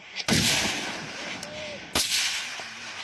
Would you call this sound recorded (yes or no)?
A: no